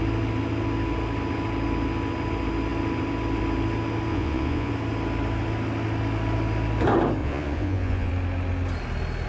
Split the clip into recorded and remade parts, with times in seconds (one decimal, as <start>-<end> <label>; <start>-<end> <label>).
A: 0.0-4.1 recorded; 4.1-4.7 remade; 4.7-7.2 recorded; 7.2-8.1 remade; 8.1-9.3 recorded